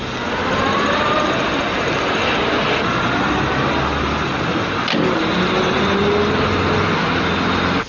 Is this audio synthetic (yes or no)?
no